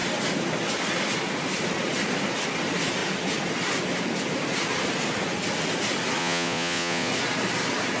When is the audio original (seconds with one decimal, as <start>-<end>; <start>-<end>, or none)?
0.0-6.2; 7.1-8.0